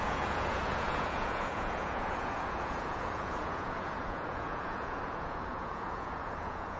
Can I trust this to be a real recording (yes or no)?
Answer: no